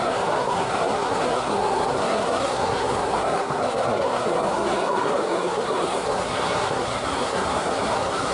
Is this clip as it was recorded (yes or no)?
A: no